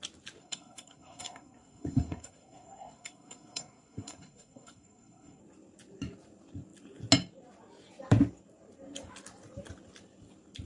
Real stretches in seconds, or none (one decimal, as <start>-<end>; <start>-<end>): 0.0-0.4; 5.4-10.7